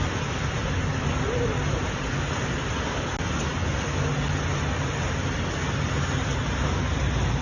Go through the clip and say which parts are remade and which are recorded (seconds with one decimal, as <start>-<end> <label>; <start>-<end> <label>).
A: 0.0-7.4 recorded